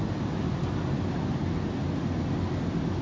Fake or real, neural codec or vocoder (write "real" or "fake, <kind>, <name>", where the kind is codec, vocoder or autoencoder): real